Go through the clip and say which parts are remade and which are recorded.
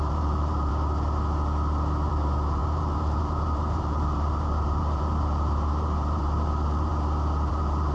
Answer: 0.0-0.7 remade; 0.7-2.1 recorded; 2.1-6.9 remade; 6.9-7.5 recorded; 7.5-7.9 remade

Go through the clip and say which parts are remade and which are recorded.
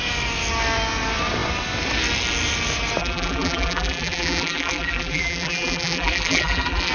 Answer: 0.0-3.0 recorded; 3.0-6.9 remade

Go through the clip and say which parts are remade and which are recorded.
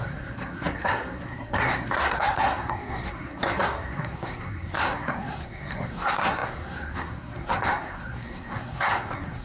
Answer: 0.0-9.4 remade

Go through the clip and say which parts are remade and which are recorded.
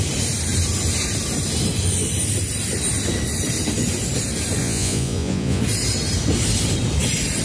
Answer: 0.0-4.6 recorded; 4.6-5.6 remade; 5.6-7.4 recorded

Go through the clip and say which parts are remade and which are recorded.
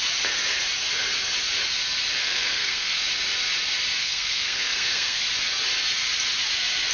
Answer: 0.0-2.2 recorded; 2.2-3.0 remade; 3.0-4.0 recorded; 4.0-5.2 remade; 5.2-6.9 recorded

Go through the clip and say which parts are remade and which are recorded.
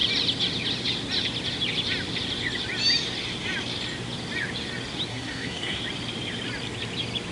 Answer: 0.0-5.1 recorded; 5.1-5.8 remade; 5.8-7.3 recorded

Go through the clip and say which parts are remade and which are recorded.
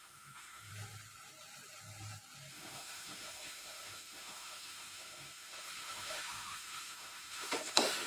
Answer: 0.0-0.7 remade; 0.7-2.5 recorded; 2.5-8.1 remade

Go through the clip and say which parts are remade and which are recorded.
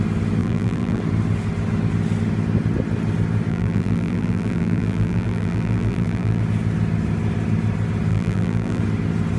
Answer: 0.0-0.4 recorded; 0.4-1.0 remade; 1.0-3.5 recorded; 3.5-6.4 remade; 6.4-8.1 recorded; 8.1-8.8 remade; 8.8-9.4 recorded